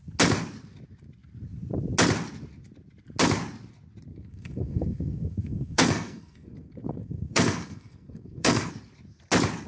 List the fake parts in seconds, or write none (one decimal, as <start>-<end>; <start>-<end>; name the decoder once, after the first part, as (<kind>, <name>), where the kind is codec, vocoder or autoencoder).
4.1-8.7 (codec, SNAC)

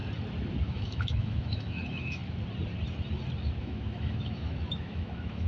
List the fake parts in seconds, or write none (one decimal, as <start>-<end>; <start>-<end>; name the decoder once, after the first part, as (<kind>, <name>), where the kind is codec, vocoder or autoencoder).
0.6-2.2 (autoencoder, DAC-VAE); 3.6-5.5

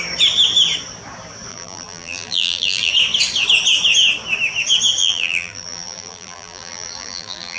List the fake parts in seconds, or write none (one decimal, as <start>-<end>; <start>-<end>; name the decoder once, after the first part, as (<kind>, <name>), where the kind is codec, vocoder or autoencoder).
1.5-2.9 (vocoder, BigVGAN v2); 5.0-7.6

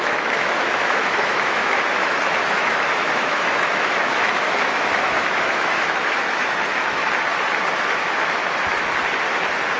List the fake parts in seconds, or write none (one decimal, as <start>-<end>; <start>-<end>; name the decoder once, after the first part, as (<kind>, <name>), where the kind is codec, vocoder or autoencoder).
0.0-7.0 (autoencoder, DAC-VAE); 7.9-8.4